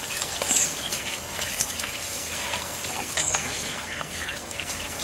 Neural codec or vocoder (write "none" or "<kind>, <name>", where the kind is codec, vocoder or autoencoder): codec, SNAC